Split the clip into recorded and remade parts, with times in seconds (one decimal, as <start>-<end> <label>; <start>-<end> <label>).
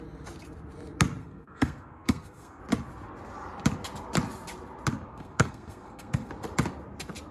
0.0-1.2 recorded; 1.2-2.6 remade; 2.6-5.1 recorded; 5.1-6.3 remade; 6.3-7.3 recorded